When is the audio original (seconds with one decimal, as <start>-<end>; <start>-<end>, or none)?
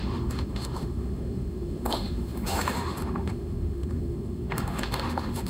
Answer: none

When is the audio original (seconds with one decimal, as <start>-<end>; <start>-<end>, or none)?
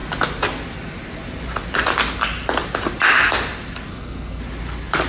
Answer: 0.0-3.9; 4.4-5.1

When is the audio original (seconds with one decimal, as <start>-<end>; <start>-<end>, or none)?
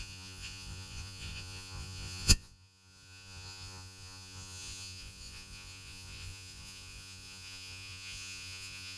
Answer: none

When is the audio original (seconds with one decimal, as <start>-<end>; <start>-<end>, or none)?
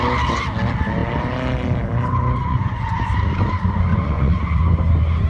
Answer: 0.0-2.4; 3.0-3.9; 4.6-5.3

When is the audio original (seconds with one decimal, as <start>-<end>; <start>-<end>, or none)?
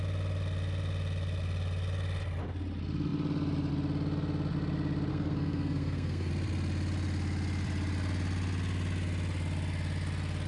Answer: 0.0-5.1; 6.3-10.5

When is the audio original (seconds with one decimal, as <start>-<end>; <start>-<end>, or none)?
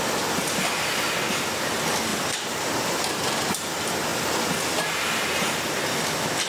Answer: 0.0-2.1; 2.6-6.5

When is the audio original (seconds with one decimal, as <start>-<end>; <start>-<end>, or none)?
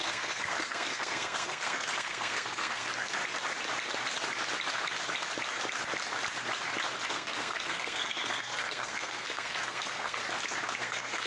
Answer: 3.2-7.1; 10.2-10.8